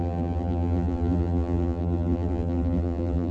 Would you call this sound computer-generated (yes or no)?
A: yes